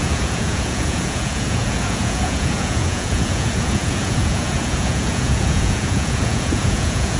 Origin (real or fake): fake